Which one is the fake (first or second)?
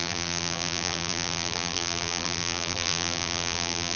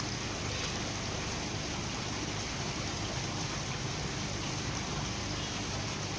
first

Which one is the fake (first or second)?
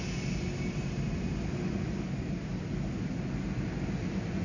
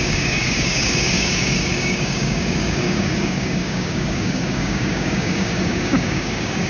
second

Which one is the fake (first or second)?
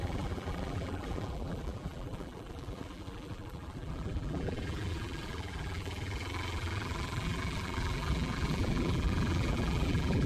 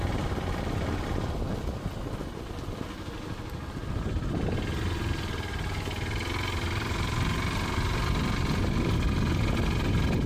first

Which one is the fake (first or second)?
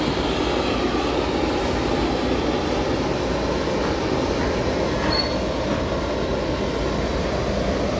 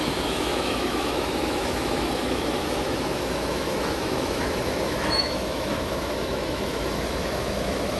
second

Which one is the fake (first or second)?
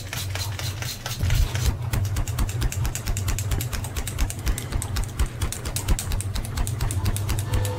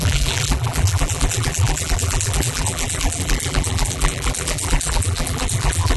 second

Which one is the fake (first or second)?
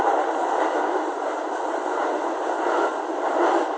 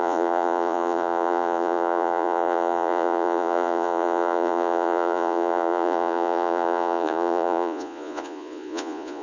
second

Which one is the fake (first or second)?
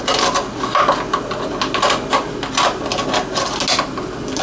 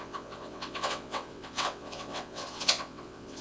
second